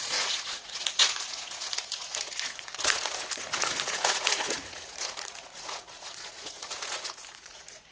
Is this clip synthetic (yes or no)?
yes